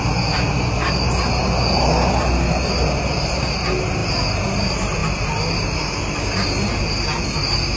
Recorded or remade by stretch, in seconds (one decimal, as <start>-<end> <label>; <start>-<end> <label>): 0.0-7.8 recorded